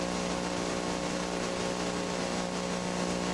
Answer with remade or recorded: recorded